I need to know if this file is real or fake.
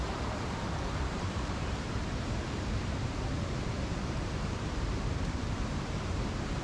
fake